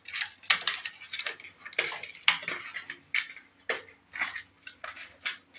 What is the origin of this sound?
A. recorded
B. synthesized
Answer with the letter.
A